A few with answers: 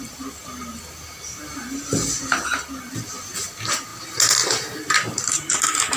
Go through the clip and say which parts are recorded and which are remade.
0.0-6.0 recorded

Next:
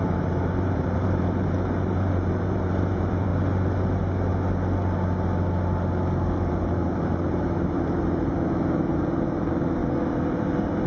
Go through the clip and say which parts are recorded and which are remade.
0.0-3.3 remade; 3.3-6.5 recorded; 6.5-9.8 remade; 9.8-10.3 recorded; 10.3-10.9 remade

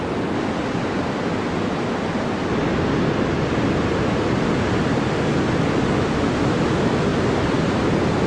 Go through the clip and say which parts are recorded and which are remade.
0.0-8.3 recorded

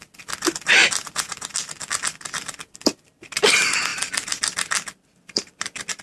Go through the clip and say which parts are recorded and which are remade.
0.0-6.0 remade